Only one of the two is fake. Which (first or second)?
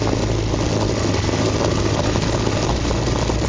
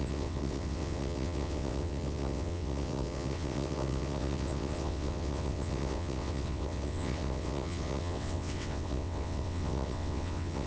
second